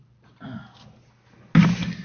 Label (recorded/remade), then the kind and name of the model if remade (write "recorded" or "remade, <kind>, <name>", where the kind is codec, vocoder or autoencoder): recorded